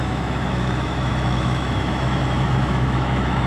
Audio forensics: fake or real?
fake